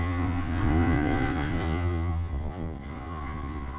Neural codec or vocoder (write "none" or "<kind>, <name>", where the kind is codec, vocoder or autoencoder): vocoder, Vocos